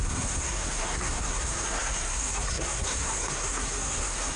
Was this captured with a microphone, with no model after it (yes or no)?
no